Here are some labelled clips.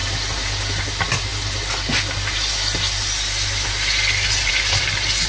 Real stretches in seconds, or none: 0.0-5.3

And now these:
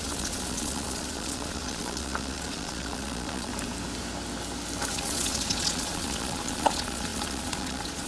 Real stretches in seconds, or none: 3.5-4.9

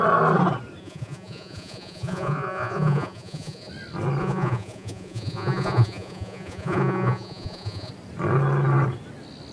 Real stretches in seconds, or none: 0.0-0.8; 3.7-4.2; 7.9-9.5

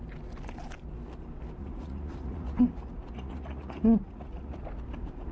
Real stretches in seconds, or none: 0.0-1.6; 4.6-5.3

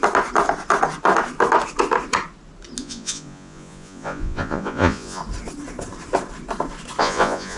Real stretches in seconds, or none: 0.0-2.8; 5.2-7.0